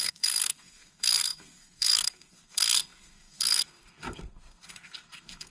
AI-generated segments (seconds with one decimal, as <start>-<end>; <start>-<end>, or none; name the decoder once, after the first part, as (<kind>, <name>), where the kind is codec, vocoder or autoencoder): 0.0-5.5 (codec, SNAC)